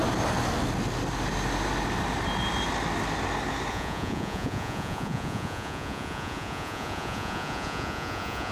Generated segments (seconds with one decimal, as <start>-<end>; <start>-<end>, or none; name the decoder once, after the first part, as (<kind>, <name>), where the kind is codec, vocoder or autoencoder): 3.7-8.5 (vocoder, Vocos)